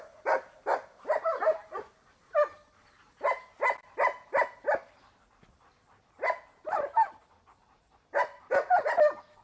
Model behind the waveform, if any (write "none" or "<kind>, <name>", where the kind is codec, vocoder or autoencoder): none